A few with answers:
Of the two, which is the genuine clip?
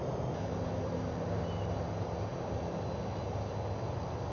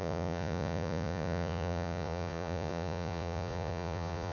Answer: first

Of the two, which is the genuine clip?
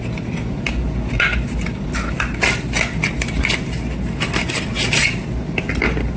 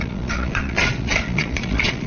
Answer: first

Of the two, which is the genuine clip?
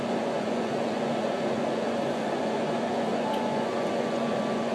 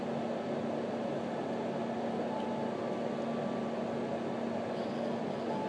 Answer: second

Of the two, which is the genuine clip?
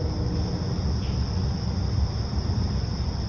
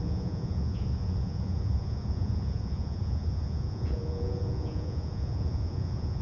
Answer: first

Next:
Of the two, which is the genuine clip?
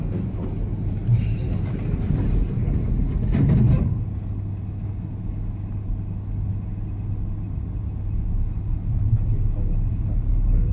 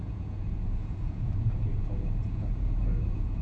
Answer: first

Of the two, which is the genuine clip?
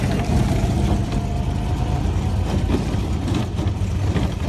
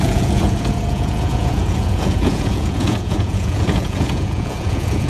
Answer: first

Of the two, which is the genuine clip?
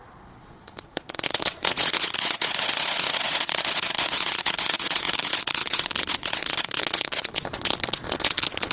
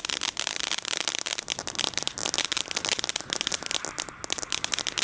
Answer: second